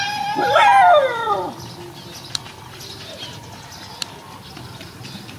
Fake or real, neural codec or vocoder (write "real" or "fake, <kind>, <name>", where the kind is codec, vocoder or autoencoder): real